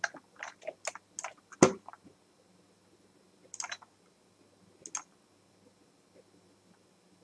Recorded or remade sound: recorded